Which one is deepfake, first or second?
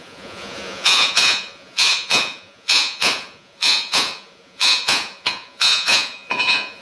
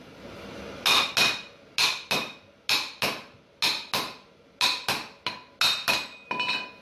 first